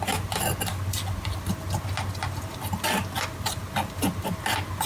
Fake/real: real